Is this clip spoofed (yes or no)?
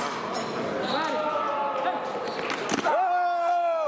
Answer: no